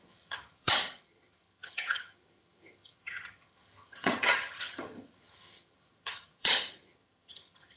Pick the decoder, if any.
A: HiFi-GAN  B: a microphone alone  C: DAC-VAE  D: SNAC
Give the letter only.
A